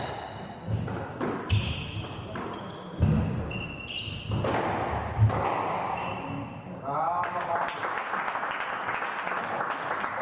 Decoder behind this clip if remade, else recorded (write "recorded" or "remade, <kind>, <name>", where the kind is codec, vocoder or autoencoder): recorded